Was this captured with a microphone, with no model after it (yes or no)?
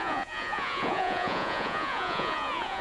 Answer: no